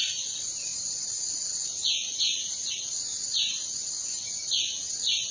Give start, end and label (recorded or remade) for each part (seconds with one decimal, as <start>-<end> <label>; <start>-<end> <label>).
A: 0.0-5.3 recorded